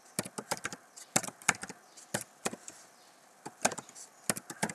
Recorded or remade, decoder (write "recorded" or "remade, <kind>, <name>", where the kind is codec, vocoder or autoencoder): recorded